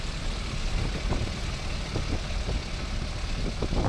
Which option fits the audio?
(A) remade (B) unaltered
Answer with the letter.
B